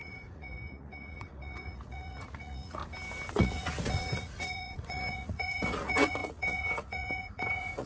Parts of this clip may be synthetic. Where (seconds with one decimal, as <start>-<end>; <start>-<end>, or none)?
0.0-2.8; 3.3-7.9